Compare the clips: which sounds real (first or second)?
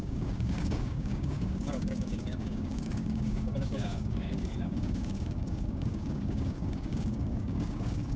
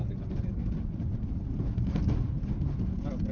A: second